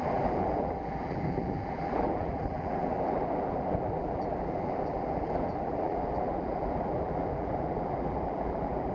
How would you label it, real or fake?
fake